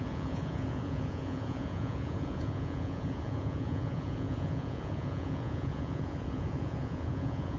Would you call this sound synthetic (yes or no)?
yes